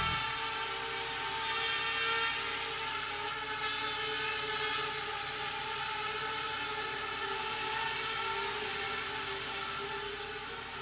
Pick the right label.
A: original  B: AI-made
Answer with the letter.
A